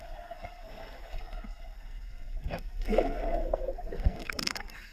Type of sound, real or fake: fake